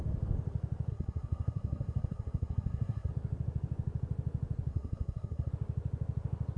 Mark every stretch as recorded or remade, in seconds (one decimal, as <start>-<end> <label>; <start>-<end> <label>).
0.0-0.9 recorded; 0.9-3.1 remade; 3.1-4.7 recorded; 4.7-5.5 remade; 5.5-6.6 recorded